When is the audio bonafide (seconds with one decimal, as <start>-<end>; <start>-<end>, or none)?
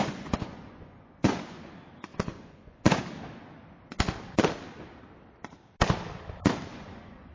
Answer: 1.6-2.1; 3.0-6.7